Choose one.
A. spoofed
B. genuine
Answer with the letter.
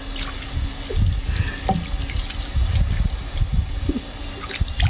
B